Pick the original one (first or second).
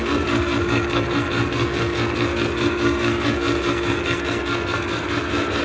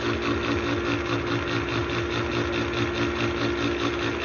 second